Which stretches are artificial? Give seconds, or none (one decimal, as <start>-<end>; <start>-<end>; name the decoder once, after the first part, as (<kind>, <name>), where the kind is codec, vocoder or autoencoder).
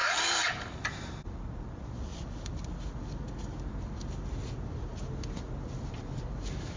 none